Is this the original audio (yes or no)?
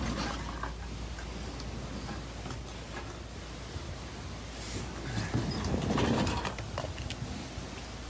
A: yes